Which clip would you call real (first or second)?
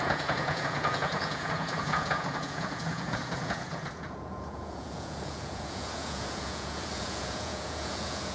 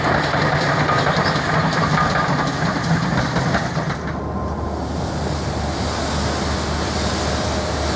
second